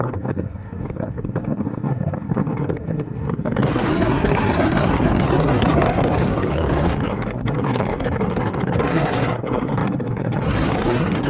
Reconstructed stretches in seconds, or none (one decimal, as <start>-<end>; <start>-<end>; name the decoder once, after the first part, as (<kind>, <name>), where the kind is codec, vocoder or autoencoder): 0.0-11.3 (codec, SNAC)